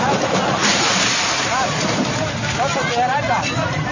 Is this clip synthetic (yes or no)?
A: yes